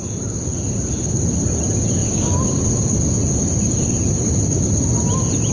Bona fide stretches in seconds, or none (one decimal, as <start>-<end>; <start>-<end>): 0.0-2.0; 2.6-5.5

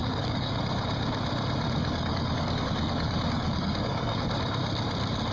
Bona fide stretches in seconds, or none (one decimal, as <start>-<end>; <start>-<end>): 0.6-1.8; 4.2-5.3

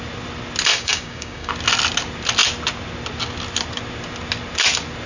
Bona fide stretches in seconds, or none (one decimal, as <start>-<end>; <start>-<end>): 0.0-0.7; 1.5-5.1